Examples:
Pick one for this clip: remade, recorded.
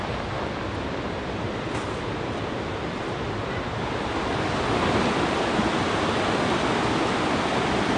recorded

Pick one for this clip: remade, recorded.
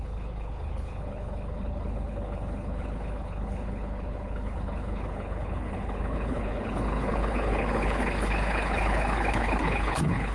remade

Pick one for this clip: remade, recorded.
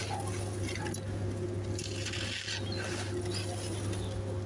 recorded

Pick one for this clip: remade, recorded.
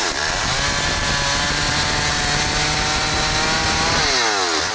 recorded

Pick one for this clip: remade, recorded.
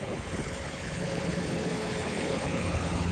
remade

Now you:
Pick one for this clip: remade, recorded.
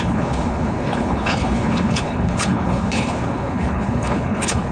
remade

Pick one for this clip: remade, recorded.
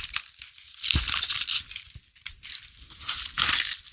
recorded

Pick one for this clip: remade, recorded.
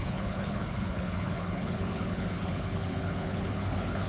remade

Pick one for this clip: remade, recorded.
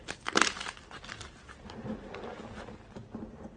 recorded